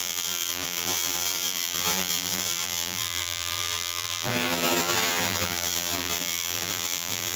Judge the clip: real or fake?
fake